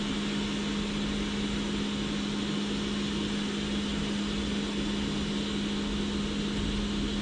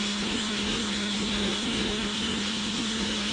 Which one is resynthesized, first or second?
second